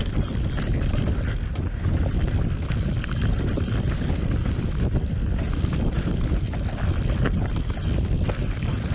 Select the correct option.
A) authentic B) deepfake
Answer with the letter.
B